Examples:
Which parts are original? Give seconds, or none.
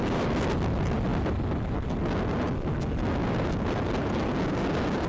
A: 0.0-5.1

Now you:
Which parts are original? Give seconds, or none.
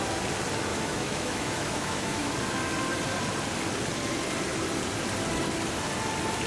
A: 0.0-0.7; 2.3-6.5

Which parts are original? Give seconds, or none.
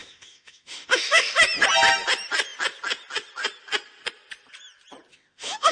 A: 1.4-5.1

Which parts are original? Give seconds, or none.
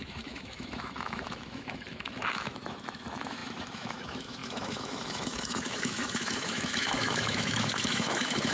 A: none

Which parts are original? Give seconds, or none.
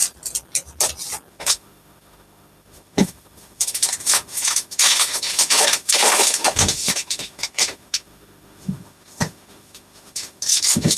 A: 0.0-1.3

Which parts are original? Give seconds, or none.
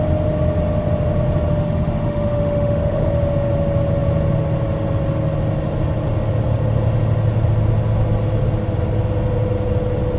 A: 0.0-1.5; 3.1-10.2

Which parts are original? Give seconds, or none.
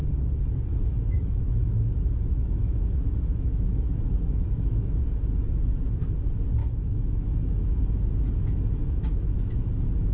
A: 0.0-0.7; 5.0-6.6; 7.8-8.8; 9.7-10.1